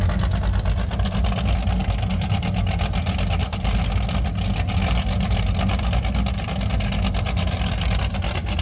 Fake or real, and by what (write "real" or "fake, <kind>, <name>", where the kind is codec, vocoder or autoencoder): real